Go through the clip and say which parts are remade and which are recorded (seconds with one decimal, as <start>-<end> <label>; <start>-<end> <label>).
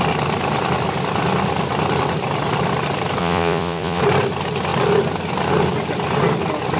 0.0-3.2 recorded; 3.2-4.0 remade; 4.0-6.8 recorded